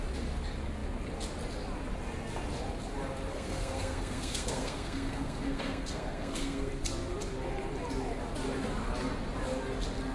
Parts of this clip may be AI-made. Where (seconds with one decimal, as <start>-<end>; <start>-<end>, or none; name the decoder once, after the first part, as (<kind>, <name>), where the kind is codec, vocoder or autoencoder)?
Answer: 3.3-6.7 (codec, SNAC)